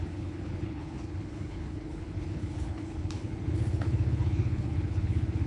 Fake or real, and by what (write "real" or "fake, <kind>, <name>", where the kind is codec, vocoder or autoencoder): fake, codec, HILCodec